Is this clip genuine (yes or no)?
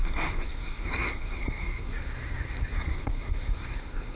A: no